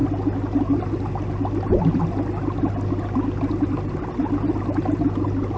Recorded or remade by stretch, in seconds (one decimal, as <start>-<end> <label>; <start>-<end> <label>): 0.0-5.6 recorded